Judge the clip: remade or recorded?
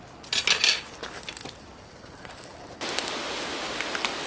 recorded